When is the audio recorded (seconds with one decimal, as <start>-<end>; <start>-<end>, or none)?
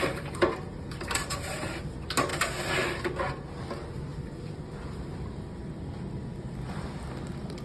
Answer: 0.0-0.7; 1.8-4.1; 5.6-7.6